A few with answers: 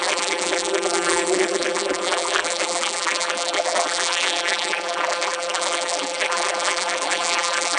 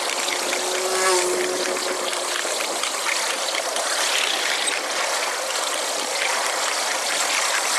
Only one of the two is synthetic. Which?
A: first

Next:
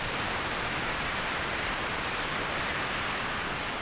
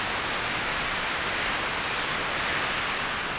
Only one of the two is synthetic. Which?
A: first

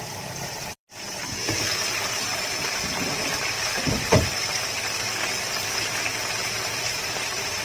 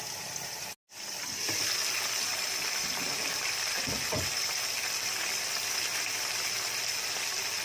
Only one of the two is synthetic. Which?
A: first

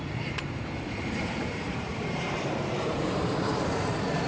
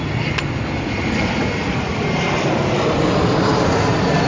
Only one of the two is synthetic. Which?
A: first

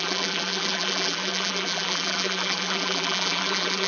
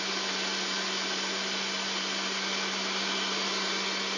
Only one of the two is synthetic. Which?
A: first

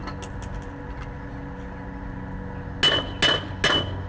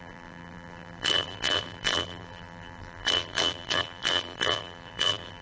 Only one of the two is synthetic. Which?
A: second